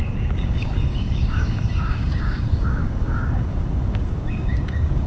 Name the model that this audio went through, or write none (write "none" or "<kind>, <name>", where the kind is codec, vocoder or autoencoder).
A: codec, DAC